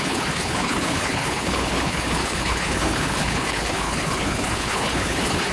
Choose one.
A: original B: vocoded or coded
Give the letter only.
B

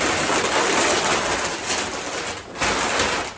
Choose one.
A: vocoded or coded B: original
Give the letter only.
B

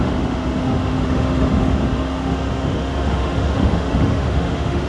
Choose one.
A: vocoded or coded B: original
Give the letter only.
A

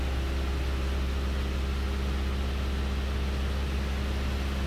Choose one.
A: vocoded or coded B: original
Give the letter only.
B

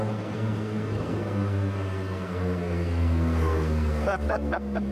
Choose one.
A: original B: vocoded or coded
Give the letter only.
B